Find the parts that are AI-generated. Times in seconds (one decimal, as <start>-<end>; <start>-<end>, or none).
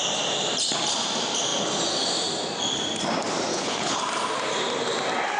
3.5-4.0